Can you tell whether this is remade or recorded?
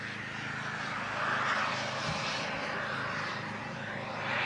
recorded